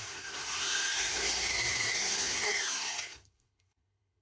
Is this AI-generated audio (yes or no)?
yes